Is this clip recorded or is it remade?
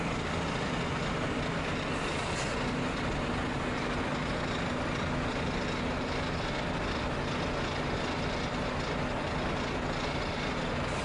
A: recorded